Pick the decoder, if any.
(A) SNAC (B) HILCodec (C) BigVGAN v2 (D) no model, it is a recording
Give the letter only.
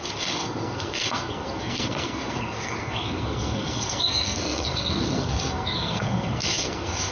A